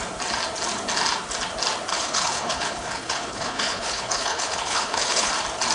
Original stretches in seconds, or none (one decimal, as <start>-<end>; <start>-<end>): 0.0-1.9; 5.3-5.7